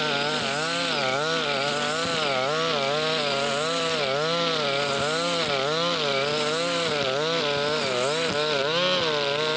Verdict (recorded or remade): recorded